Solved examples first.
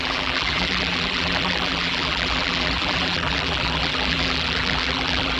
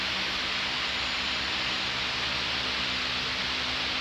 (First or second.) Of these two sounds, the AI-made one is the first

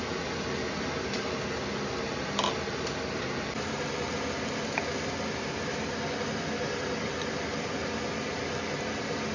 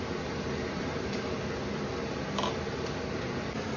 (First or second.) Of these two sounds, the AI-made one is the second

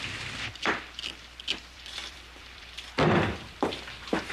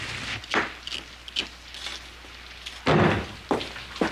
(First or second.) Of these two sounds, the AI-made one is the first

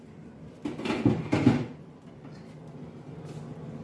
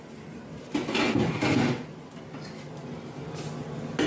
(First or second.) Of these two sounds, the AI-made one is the first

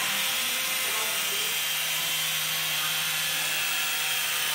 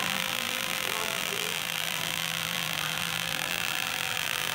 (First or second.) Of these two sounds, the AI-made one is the second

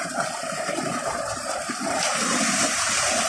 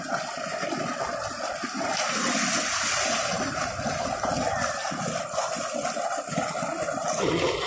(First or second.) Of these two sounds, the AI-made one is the first